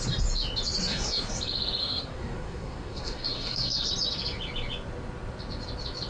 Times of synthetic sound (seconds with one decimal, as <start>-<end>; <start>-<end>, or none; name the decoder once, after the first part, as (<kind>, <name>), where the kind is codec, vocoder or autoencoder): 0.9-1.4 (codec, SNAC); 1.8-3.9